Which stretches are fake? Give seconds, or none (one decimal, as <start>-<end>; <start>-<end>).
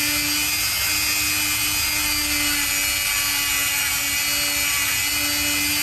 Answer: none